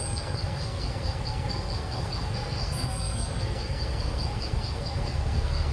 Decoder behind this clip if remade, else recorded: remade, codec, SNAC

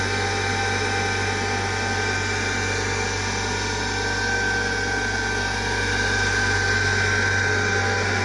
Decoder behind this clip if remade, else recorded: recorded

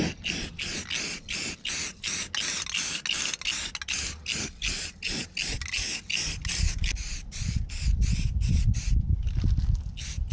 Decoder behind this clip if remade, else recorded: recorded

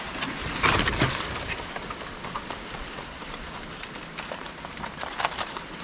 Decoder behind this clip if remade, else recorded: recorded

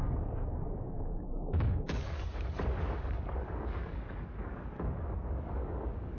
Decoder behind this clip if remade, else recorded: remade, codec, DAC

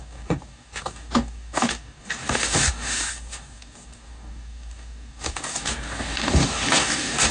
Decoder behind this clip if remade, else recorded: remade, codec, DAC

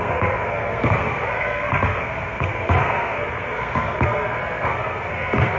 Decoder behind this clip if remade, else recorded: remade, codec, SNAC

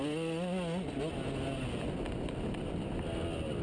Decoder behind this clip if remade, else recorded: recorded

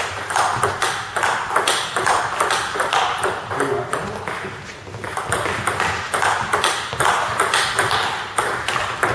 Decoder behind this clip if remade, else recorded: recorded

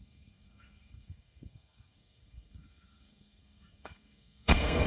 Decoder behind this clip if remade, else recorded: remade, codec, SNAC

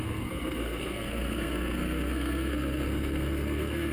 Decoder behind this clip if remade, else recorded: remade, codec, SNAC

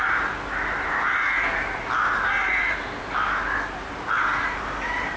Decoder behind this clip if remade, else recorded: recorded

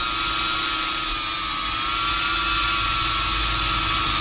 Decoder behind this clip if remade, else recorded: recorded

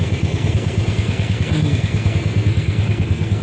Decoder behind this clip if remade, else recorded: remade, codec, SNAC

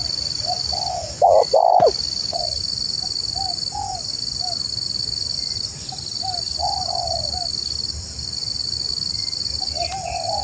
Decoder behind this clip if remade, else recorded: recorded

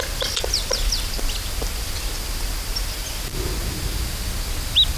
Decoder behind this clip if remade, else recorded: recorded